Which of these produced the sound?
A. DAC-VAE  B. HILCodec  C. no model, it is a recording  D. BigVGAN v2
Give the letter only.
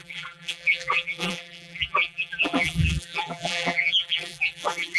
D